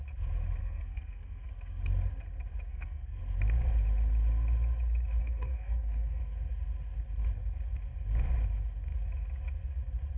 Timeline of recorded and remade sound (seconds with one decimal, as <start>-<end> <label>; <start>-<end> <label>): 0.0-0.6 recorded; 0.6-1.5 remade; 1.5-2.7 recorded; 2.7-3.2 remade; 3.2-5.2 recorded; 5.2-6.2 remade; 6.2-10.2 recorded

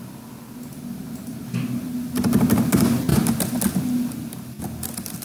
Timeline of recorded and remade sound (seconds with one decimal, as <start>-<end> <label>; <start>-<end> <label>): 0.0-5.2 recorded